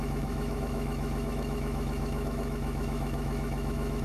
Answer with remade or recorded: remade